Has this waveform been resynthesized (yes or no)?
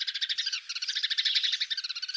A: no